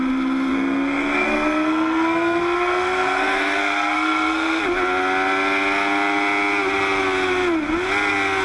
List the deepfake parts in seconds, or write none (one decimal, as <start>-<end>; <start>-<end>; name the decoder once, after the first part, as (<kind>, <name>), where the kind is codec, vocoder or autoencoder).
0.5-4.6 (codec, SNAC)